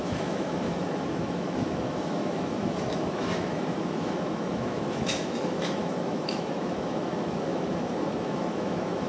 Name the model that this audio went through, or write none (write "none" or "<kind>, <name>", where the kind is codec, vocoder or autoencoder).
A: autoencoder, DAC-VAE